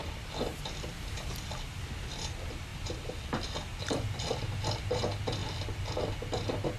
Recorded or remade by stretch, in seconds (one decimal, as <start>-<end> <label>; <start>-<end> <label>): 0.0-2.1 remade; 2.1-2.7 recorded; 2.7-5.0 remade; 5.0-5.4 recorded; 5.4-5.9 remade; 5.9-6.8 recorded

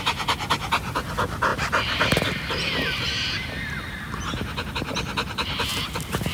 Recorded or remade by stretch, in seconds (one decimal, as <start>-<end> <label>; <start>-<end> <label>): 0.0-1.5 recorded; 1.5-4.7 remade; 4.7-6.3 recorded

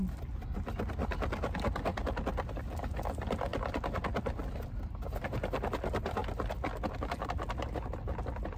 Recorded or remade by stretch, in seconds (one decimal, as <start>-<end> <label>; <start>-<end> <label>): 0.0-8.6 recorded

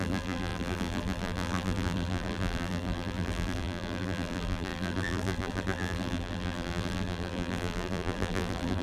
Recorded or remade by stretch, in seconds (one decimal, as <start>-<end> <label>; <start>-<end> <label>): 0.0-8.8 remade